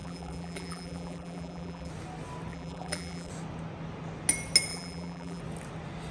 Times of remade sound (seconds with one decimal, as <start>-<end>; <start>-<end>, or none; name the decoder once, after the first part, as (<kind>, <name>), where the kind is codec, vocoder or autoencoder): 0.0-1.9 (vocoder, BigVGAN v2); 2.5-3.3; 4.7-5.4